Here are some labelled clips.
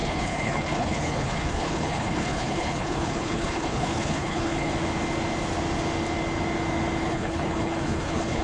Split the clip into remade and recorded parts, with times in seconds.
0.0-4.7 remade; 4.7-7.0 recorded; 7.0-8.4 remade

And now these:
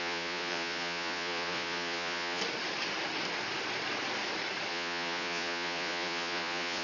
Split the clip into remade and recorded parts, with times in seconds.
0.0-2.4 remade; 2.4-4.7 recorded; 4.7-6.8 remade

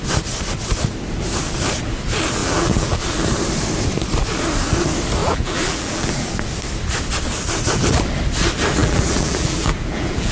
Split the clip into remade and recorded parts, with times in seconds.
0.0-2.4 recorded; 2.4-3.0 remade; 3.0-5.2 recorded; 5.2-6.3 remade; 6.3-8.8 recorded; 8.8-10.3 remade

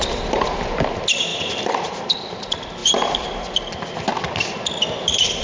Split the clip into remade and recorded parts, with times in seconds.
0.0-1.3 recorded; 1.3-2.3 remade; 2.3-5.4 recorded

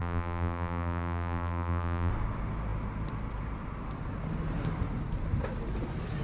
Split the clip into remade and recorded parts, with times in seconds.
0.0-2.1 remade; 2.1-6.2 recorded

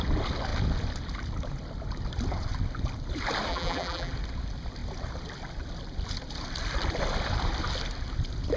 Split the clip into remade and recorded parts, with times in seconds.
0.0-3.5 recorded; 3.5-4.1 remade; 4.1-8.6 recorded